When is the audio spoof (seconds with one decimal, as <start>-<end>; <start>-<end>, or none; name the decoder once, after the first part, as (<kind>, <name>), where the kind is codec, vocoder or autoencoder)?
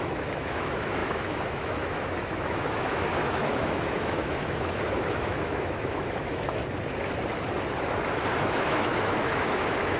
0.0-6.6 (autoencoder, DAC-VAE); 8.4-10.0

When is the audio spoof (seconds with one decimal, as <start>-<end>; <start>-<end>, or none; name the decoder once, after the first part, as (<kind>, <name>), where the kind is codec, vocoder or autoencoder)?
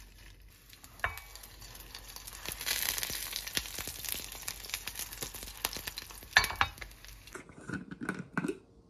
none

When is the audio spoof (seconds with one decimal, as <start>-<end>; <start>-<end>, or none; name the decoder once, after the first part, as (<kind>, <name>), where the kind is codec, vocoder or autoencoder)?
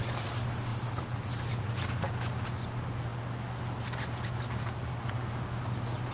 none